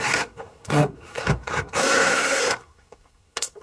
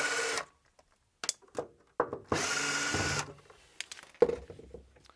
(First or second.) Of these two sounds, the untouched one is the second